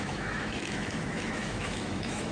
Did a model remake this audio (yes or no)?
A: yes